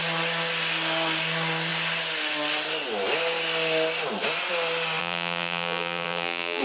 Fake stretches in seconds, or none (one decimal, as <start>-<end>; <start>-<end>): 5.0-6.6